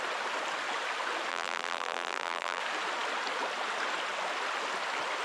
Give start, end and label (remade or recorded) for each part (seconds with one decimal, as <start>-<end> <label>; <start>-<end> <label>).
0.0-1.3 recorded; 1.3-2.6 remade; 2.6-5.2 recorded